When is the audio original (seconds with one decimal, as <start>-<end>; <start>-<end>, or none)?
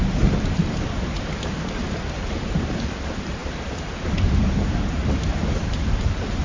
none